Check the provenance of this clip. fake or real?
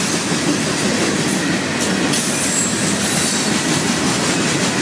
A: real